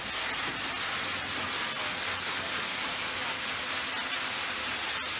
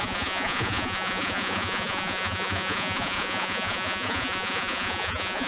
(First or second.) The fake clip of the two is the second